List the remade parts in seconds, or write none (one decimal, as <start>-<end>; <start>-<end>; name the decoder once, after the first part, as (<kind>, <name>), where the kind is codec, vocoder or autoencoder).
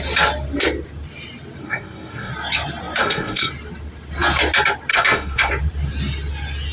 1.6-2.3 (codec, SNAC); 3.0-3.5; 4.9-5.5